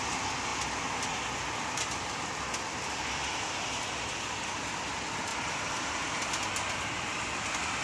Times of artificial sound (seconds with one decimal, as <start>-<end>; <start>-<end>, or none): 5.3-6.7